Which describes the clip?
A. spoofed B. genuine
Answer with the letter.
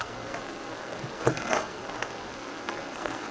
A